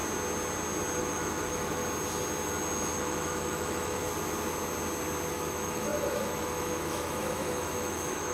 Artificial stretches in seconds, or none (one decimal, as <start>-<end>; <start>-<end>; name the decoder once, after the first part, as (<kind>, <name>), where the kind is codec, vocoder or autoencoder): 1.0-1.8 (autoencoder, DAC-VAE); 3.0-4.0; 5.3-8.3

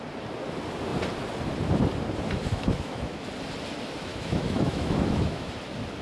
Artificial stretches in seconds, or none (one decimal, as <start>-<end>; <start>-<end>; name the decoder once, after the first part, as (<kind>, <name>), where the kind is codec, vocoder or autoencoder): 2.5-3.3 (autoencoder, DAC-VAE); 4.1-5.5

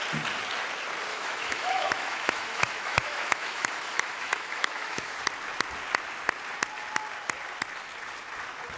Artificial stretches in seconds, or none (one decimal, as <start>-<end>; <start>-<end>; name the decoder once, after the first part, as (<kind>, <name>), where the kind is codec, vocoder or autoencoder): 1.1-5.2 (autoencoder, DAC-VAE)

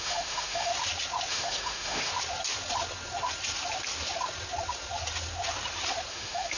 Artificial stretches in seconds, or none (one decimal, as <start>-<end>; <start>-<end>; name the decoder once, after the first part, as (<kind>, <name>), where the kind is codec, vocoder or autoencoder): 0.0-0.7 (autoencoder, DAC-VAE); 1.3-2.1; 6.1-6.6

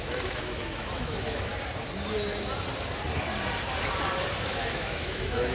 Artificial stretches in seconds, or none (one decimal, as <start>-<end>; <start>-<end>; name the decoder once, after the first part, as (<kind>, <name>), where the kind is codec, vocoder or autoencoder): 0.0-1.5 (autoencoder, DAC-VAE); 4.5-5.5